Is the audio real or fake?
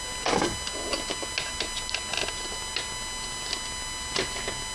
real